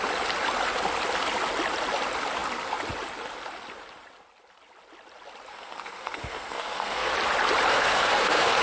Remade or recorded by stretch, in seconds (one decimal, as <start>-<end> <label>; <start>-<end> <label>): 0.0-5.5 recorded; 5.5-7.1 remade; 7.1-7.7 recorded; 7.7-8.6 remade